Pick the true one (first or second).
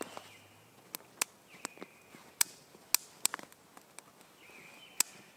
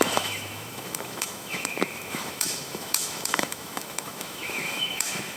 first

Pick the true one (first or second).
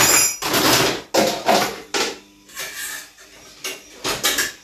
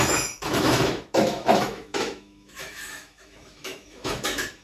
first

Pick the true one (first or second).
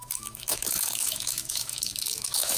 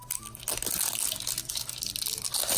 second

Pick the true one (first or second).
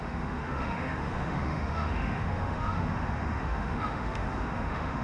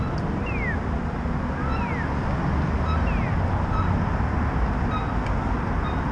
second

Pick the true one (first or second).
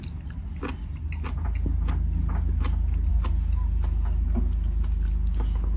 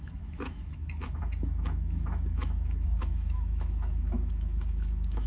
first